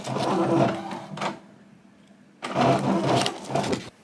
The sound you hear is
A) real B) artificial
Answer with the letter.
A